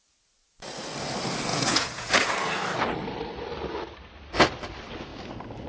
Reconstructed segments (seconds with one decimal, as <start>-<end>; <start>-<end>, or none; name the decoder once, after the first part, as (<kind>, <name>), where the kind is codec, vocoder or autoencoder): 1.5-2.3 (vocoder, Vocos)